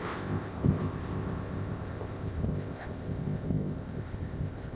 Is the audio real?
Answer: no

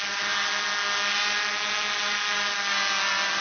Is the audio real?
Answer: yes